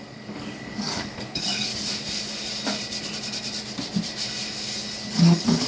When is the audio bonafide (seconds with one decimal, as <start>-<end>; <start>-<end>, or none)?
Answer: 1.7-5.1